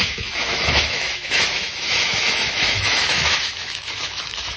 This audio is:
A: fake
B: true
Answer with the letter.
A